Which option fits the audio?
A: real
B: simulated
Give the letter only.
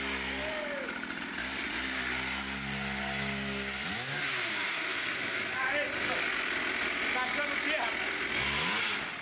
A